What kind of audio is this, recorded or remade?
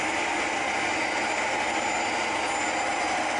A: recorded